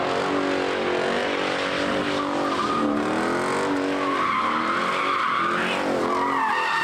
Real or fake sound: real